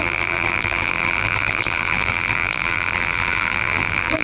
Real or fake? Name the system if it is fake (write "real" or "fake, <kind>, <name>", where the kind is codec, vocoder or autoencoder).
fake, vocoder, BigVGAN v2